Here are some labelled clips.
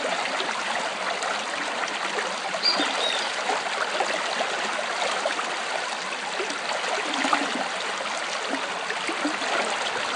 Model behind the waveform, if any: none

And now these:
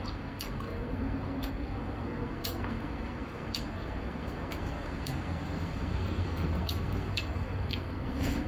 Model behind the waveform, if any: codec, SNAC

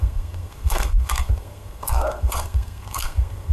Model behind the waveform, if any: codec, SNAC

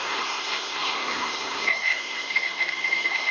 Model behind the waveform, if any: codec, SNAC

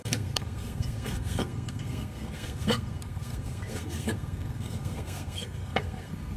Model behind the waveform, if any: codec, SNAC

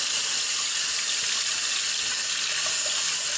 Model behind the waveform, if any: none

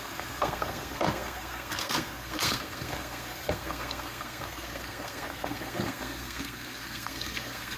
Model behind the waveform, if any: codec, SNAC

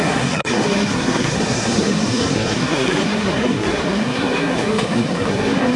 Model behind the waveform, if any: codec, SNAC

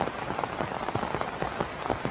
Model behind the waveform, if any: none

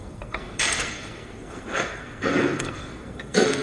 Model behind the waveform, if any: codec, SNAC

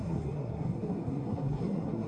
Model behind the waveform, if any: codec, SNAC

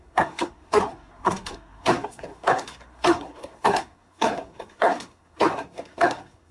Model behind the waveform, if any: codec, SNAC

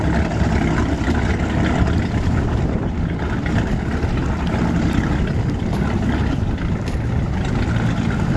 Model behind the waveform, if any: none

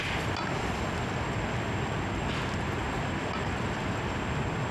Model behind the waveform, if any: none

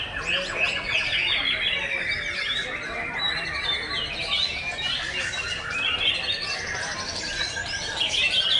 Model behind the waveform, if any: none